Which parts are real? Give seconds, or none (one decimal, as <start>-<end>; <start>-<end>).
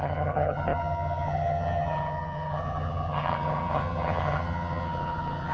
none